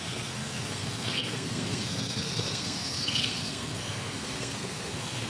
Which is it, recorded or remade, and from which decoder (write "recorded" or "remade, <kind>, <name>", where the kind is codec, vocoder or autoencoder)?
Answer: remade, codec, SNAC